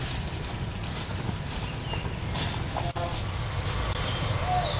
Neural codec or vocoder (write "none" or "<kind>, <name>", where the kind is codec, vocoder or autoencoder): none